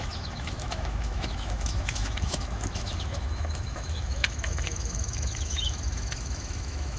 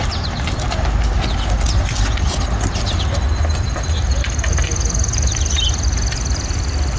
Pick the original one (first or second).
second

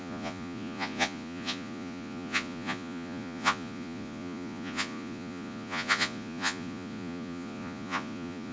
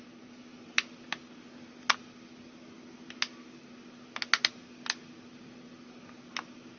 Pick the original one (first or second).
second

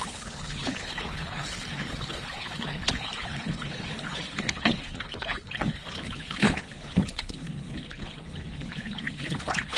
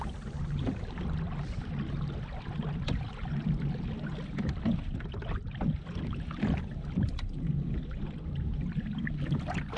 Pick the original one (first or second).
second